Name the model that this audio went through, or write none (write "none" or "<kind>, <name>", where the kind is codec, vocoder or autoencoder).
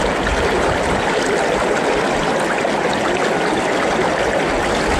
none